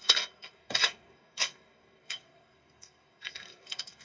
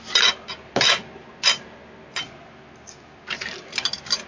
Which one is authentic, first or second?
second